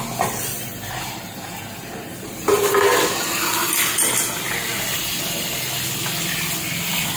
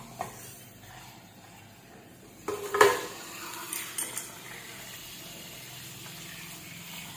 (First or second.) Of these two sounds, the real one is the first